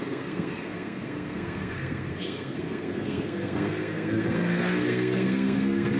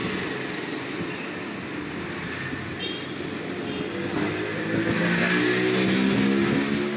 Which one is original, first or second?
second